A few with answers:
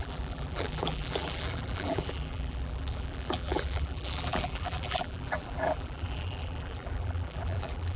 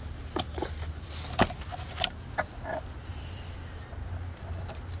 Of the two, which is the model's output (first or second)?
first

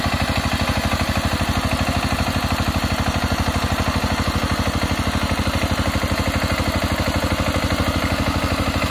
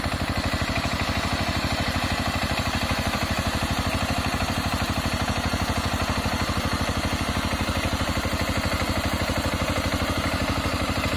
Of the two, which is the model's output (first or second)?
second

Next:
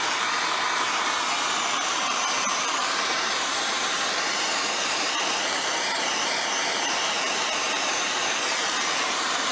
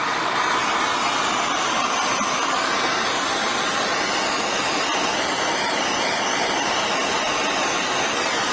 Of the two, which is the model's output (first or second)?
first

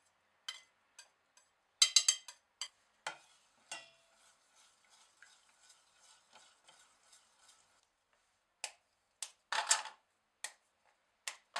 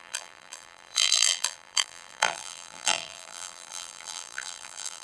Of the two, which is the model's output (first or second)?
second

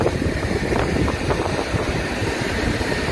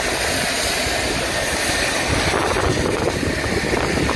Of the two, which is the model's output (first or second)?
first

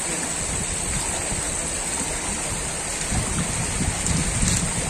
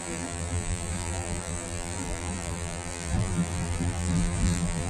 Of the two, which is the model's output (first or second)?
second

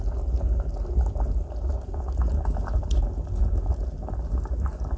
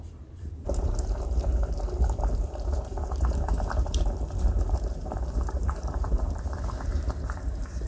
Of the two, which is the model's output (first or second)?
second